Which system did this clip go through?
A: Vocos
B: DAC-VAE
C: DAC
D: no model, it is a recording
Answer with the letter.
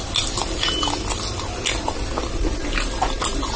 D